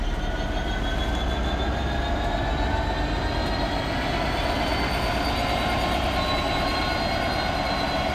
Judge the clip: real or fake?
real